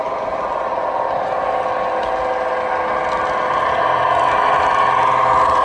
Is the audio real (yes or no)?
yes